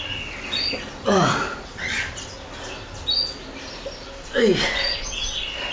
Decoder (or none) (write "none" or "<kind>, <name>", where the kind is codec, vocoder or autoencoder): none